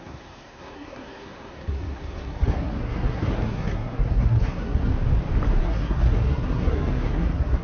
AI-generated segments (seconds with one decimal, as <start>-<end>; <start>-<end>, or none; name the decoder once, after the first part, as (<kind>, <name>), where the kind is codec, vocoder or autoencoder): 0.0-4.9 (codec, SNAC); 5.6-7.6